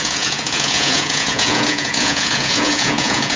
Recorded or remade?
remade